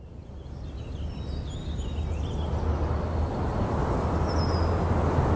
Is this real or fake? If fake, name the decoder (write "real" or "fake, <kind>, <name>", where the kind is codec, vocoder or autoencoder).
real